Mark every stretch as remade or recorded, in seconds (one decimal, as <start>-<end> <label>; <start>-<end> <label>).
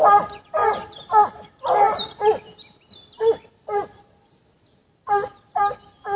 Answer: 0.0-4.8 recorded; 4.8-5.6 remade; 5.6-6.2 recorded